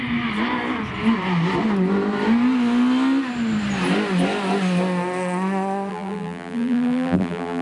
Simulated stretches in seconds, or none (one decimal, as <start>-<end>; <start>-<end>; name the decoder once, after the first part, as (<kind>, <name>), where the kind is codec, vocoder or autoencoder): 5.9-7.6 (vocoder, BigVGAN v2)